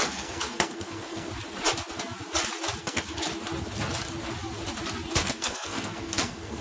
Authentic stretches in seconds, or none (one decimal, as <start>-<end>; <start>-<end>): 1.3-2.8; 3.3-5.1